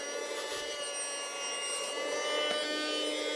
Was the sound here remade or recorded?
recorded